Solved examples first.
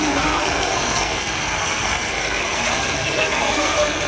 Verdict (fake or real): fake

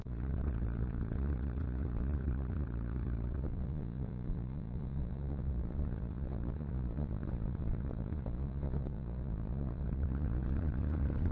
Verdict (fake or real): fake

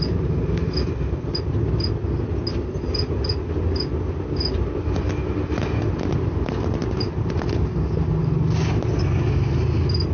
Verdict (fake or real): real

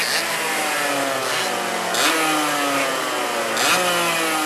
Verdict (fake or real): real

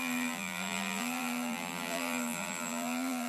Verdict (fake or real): fake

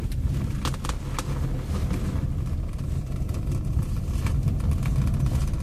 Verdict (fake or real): real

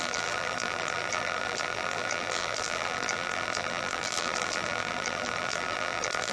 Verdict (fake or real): fake